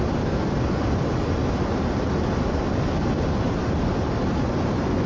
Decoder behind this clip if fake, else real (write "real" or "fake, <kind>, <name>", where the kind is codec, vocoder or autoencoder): real